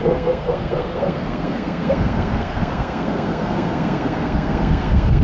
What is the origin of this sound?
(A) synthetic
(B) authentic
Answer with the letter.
A